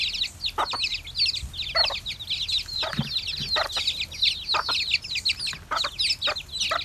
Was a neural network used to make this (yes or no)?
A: no